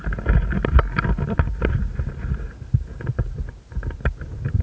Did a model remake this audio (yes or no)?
no